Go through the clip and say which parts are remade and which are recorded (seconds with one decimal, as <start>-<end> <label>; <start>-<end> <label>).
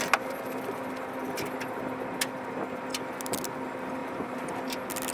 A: 0.0-4.0 recorded; 4.0-4.5 remade; 4.5-5.1 recorded